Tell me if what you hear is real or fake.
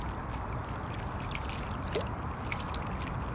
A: real